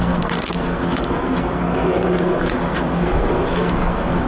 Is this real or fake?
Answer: fake